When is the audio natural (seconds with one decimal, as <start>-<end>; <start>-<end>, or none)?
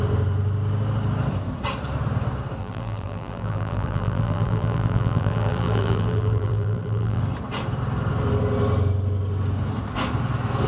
0.0-2.6; 7.2-10.7